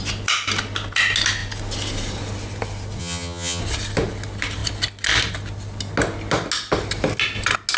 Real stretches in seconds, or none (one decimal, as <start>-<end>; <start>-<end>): 0.0-3.0; 3.6-7.8